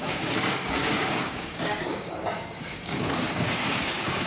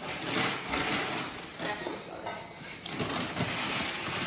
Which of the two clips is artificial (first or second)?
first